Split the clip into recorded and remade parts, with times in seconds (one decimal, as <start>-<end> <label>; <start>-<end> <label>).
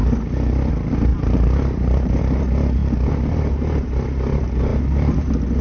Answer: 0.0-1.1 recorded; 1.1-2.2 remade; 2.2-5.6 recorded